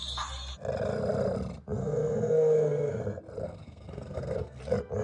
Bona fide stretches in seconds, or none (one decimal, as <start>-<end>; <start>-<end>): 0.0-1.8; 3.0-3.4; 4.6-5.0